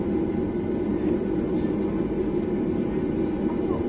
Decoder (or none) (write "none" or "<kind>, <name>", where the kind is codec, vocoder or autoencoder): none